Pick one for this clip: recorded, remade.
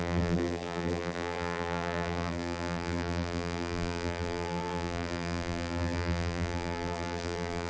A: remade